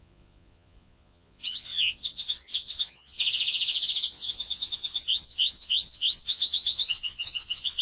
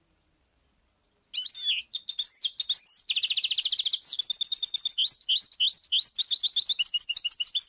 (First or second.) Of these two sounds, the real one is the second